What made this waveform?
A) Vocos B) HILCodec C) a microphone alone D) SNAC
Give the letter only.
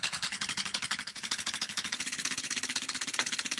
B